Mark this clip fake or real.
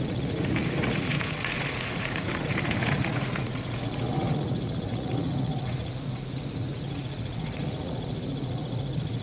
fake